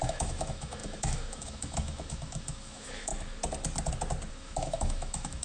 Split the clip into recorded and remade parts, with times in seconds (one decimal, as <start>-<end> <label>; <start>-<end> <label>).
0.0-3.1 remade; 3.1-4.3 recorded; 4.3-5.4 remade